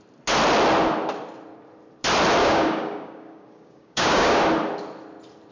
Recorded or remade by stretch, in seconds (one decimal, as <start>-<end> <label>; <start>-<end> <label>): 0.0-2.4 recorded; 2.4-4.4 remade; 4.4-5.5 recorded